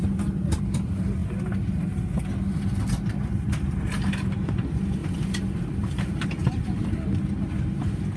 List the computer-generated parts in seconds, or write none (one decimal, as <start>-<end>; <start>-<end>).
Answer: 5.0-6.9